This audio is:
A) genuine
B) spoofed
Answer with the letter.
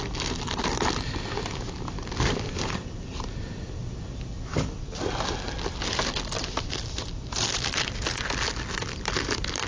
A